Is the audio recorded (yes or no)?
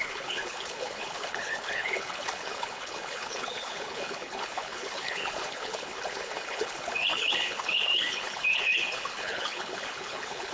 no